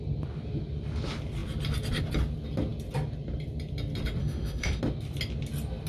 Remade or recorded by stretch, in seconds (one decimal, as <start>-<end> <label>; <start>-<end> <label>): 0.0-4.2 recorded; 4.2-4.8 remade; 4.8-5.9 recorded